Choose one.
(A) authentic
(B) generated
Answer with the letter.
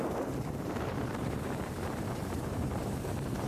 B